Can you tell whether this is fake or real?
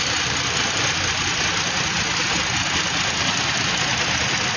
real